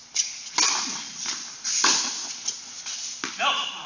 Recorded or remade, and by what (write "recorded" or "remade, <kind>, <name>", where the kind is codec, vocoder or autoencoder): recorded